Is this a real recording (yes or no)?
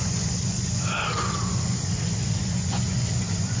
no